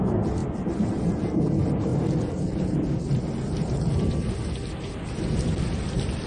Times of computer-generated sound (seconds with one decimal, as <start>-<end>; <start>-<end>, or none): 1.9-4.0